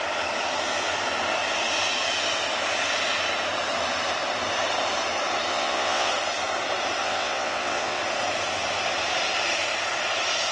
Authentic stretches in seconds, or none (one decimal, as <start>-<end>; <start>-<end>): 0.0-5.5; 6.1-7.0; 8.0-10.5